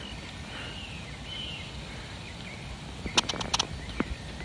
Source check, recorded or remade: recorded